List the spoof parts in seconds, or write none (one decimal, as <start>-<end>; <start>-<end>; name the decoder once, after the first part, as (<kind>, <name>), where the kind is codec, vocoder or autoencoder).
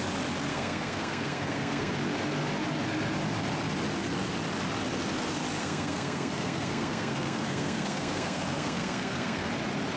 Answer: 0.5-1.9 (codec, SNAC); 5.6-9.5